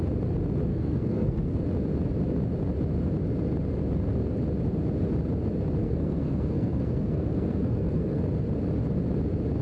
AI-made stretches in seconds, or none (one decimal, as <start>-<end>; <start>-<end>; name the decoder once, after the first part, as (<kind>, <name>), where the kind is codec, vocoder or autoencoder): 0.7-1.6 (codec, SNAC); 5.8-8.2